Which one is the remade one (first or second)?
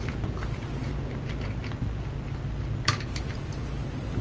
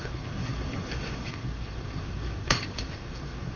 second